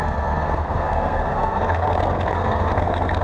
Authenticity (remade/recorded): remade